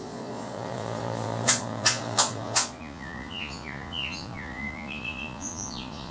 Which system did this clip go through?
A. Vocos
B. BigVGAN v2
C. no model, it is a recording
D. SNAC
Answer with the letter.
A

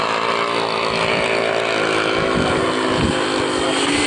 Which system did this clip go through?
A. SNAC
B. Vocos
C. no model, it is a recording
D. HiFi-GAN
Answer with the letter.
C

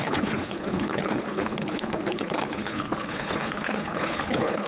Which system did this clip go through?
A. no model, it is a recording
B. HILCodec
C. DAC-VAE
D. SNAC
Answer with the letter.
B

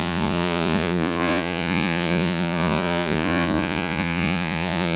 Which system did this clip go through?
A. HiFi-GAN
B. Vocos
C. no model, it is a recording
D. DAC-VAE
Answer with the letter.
B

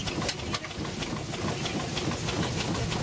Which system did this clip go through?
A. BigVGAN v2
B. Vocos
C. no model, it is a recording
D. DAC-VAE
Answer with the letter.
C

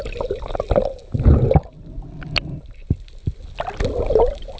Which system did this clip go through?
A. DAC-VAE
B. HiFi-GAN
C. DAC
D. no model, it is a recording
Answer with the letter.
D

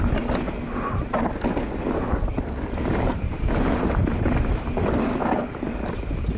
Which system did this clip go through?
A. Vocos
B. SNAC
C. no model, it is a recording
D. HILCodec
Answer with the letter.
C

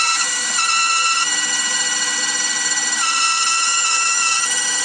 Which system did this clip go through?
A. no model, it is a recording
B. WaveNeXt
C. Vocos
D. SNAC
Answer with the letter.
A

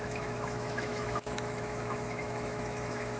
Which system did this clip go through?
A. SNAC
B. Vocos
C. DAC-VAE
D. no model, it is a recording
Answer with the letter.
C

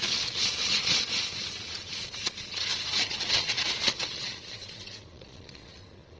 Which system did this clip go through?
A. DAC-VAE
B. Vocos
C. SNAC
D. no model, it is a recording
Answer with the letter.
B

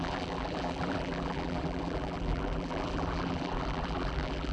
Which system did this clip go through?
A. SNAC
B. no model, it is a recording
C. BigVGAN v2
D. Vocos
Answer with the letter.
C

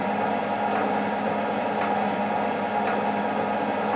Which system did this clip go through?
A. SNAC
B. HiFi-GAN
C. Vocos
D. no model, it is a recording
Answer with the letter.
D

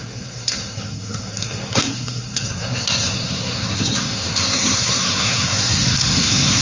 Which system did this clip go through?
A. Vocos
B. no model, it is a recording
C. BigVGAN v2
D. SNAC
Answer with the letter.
D